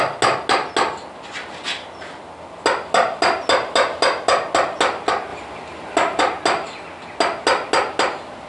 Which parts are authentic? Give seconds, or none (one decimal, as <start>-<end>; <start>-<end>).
0.0-8.5

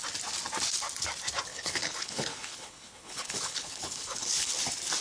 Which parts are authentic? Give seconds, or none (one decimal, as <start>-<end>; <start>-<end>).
0.0-1.5; 4.5-5.0

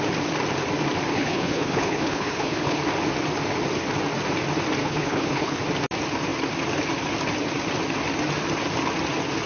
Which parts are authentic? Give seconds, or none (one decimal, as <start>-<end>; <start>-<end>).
0.0-1.1; 2.8-4.8; 5.6-9.5

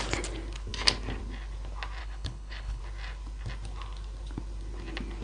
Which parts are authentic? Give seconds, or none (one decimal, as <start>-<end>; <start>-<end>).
0.0-2.0; 2.8-5.2

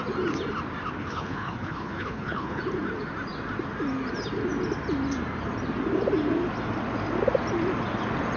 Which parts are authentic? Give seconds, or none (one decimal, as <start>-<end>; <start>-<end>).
0.0-1.0; 2.6-8.4

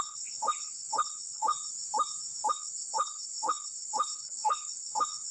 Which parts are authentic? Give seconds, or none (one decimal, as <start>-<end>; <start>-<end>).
1.5-2.5